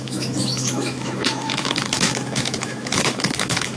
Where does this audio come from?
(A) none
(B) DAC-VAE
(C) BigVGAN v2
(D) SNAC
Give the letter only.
B